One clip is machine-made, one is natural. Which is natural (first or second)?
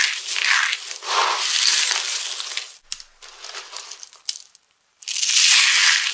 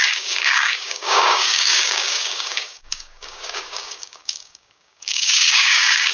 first